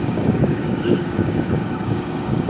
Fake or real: fake